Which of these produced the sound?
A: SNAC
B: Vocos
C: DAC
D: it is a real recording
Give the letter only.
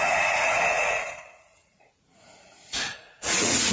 B